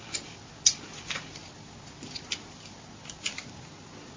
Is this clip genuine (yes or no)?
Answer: yes